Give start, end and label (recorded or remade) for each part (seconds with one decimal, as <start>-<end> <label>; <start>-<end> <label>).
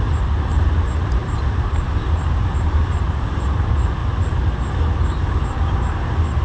0.0-4.0 remade; 4.0-4.6 recorded; 4.6-6.4 remade